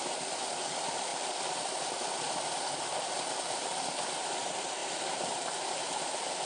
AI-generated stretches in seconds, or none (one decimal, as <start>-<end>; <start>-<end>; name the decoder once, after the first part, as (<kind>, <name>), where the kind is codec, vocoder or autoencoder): 1.1-2.3 (vocoder, BigVGAN v2); 4.8-5.7